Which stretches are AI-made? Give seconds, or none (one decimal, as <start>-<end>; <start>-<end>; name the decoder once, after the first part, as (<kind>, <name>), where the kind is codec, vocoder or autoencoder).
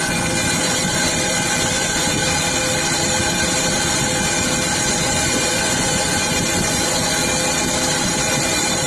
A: 0.0-2.2 (vocoder, Vocos); 4.9-7.2; 8.3-8.9